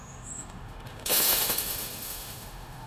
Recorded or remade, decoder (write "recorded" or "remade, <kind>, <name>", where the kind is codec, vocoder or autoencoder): remade, autoencoder, DAC-VAE